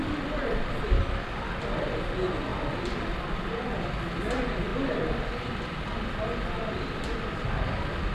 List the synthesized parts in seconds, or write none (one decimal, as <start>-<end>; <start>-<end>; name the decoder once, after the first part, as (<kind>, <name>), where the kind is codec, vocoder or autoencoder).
2.5-3.3 (vocoder, BigVGAN v2)

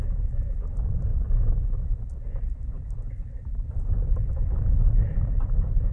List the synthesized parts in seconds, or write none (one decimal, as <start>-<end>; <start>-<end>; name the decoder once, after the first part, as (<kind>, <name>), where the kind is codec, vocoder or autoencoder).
none

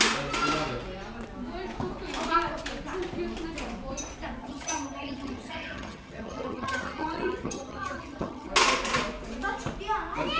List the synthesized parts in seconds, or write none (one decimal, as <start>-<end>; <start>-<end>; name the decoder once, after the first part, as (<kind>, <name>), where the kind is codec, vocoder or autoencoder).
4.4-8.5 (vocoder, HiFi-GAN)

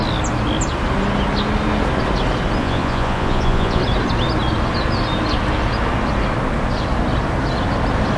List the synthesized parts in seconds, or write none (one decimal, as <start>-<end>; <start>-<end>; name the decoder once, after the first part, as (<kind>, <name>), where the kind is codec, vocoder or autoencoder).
2.6-3.8 (vocoder, Vocos)

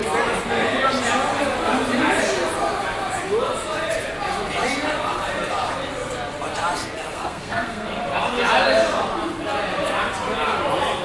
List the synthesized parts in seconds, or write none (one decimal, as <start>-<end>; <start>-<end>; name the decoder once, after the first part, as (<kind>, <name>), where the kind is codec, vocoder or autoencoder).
7.1-8.0 (codec, SNAC)

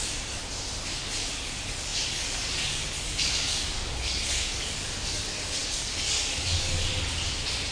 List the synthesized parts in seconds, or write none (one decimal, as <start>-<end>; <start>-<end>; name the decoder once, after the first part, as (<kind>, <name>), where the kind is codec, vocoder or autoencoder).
0.0-0.4 (codec, DAC); 1.0-6.9

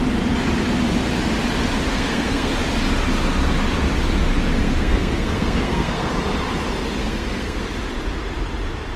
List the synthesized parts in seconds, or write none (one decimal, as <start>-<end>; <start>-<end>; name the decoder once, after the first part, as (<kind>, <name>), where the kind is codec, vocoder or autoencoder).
1.9-2.5 (codec, SNAC); 4.6-6.1; 7.0-7.6